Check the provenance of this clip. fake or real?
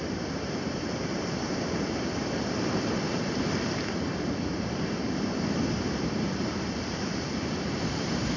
fake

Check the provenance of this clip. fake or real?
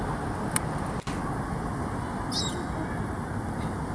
real